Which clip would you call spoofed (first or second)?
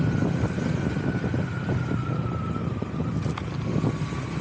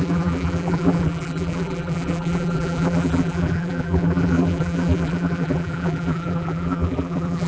second